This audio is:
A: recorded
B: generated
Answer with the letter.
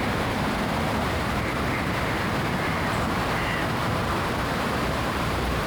B